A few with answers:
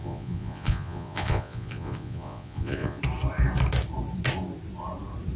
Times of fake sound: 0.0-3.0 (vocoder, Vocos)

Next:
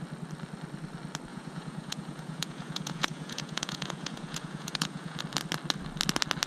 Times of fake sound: 1.3-5.2 (vocoder, Vocos)

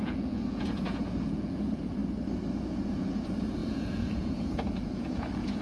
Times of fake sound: 0.0-2.0 (vocoder, Vocos); 2.5-5.6

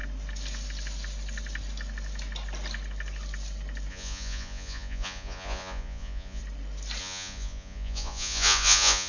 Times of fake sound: 3.9-6.4 (vocoder, Vocos); 7.0-9.1

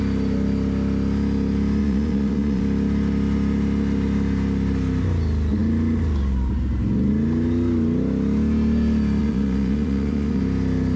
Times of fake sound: 1.8-2.6 (vocoder, Vocos); 9.2-10.4

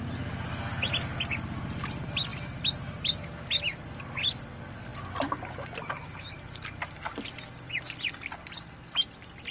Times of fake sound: none